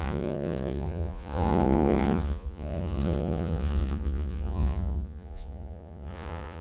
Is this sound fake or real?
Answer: fake